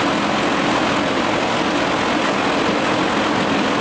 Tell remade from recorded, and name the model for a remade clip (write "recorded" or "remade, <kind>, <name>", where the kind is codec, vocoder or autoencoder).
recorded